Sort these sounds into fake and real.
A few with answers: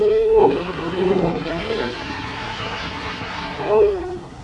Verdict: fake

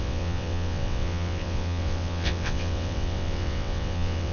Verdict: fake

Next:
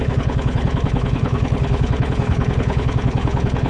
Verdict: fake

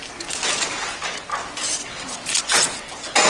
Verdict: real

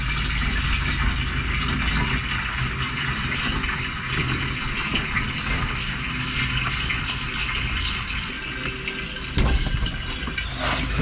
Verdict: real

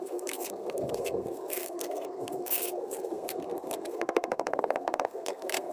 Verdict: fake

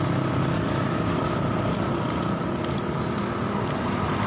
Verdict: real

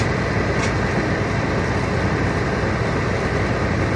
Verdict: real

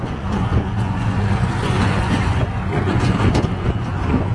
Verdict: fake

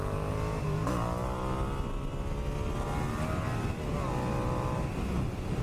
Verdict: real